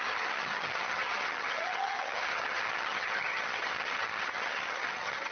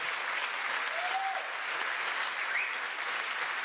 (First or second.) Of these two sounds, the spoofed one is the first